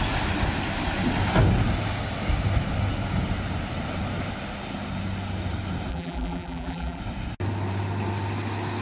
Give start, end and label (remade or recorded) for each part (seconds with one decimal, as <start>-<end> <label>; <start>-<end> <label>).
0.0-5.9 recorded; 5.9-7.0 remade; 7.0-8.8 recorded